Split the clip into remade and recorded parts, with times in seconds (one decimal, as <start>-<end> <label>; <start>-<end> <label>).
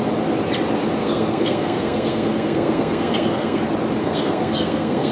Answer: 0.0-1.0 recorded; 1.0-3.6 remade; 3.6-4.0 recorded; 4.0-5.1 remade